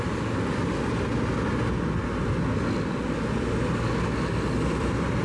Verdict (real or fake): real